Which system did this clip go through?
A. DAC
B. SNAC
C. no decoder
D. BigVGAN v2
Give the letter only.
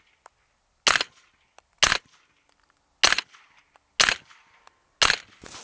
C